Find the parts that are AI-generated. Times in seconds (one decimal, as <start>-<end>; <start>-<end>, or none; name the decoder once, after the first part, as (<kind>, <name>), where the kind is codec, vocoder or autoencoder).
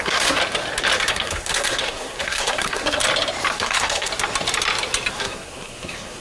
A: 0.0-0.4 (codec, SNAC); 1.1-3.0; 3.5-4.1; 5.1-6.2